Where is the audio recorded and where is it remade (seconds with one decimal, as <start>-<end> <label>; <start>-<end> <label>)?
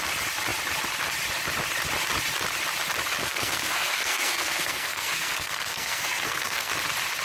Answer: 0.0-3.2 recorded; 3.2-6.7 remade; 6.7-7.2 recorded